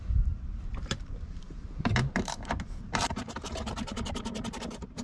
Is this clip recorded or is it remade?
remade